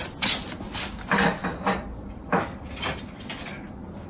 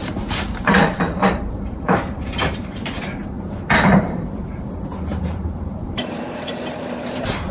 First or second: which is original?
first